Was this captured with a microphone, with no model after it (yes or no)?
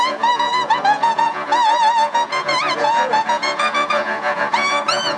no